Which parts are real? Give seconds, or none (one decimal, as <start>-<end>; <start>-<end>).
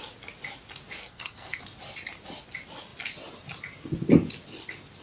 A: 0.0-1.0; 1.6-5.0